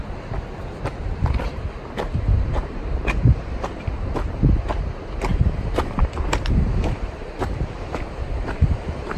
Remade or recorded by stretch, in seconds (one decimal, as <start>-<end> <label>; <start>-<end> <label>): 0.0-2.1 recorded; 2.1-4.4 remade; 4.4-5.3 recorded; 5.3-9.2 remade